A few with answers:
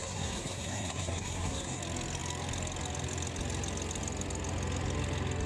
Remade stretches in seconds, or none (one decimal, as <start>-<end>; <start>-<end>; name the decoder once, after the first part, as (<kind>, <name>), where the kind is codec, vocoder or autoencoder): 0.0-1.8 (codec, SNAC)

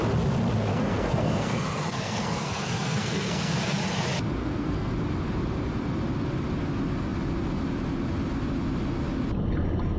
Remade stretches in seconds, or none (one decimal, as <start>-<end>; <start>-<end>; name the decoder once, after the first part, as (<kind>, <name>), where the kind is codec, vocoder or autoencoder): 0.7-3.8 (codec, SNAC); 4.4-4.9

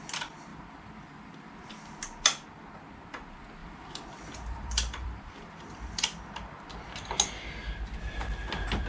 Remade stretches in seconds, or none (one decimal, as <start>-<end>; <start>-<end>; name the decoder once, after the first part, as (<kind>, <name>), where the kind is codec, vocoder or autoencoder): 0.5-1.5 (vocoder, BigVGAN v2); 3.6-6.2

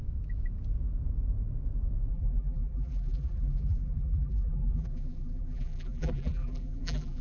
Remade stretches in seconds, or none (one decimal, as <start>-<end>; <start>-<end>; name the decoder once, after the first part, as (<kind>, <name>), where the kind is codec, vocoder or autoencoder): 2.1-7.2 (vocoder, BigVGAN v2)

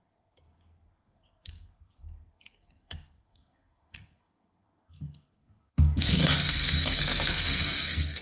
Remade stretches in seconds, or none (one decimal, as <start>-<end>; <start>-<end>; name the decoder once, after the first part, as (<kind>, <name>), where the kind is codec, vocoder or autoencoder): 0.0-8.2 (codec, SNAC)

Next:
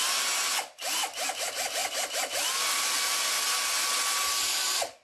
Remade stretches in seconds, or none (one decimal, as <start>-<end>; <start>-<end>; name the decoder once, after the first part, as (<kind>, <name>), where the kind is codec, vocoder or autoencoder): none

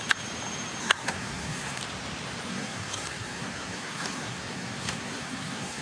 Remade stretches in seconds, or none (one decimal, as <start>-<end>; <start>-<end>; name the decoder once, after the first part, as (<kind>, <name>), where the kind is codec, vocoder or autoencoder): 0.8-1.8 (codec, SNAC); 2.5-5.8